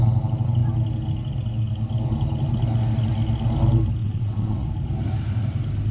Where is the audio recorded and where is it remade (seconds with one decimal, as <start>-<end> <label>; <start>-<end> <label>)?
0.0-4.0 recorded; 4.0-4.7 remade; 4.7-5.9 recorded